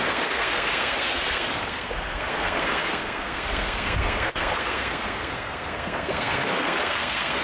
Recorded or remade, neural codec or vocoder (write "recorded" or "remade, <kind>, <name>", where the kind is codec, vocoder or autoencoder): remade, codec, SNAC